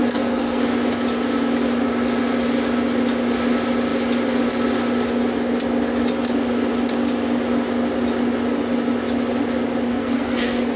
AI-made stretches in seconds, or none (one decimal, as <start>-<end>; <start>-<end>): 0.0-0.6; 9.9-10.8